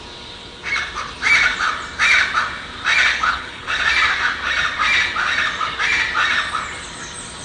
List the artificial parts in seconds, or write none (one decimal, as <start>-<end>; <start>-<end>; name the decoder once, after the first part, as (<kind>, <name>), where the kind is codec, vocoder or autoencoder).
3.1-3.8 (codec, HILCodec)